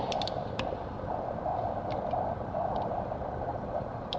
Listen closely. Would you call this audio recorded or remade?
remade